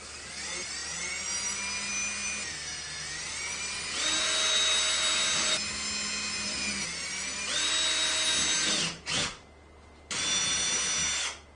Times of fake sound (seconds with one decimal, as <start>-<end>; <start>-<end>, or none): none